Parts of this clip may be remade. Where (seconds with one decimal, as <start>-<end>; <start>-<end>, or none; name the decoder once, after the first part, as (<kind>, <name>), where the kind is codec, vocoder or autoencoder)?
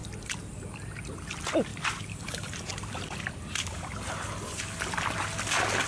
1.7-5.2 (vocoder, BigVGAN v2)